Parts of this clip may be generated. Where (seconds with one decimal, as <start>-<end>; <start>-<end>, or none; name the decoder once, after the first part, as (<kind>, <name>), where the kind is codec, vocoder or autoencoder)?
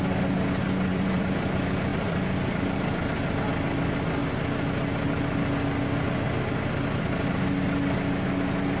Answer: 0.9-1.5 (vocoder, BigVGAN v2); 1.9-3.5